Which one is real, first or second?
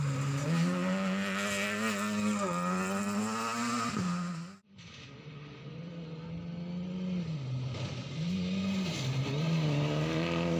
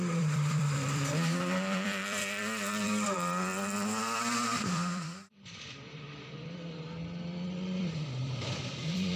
first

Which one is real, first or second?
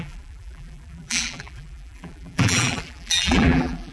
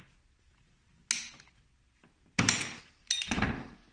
second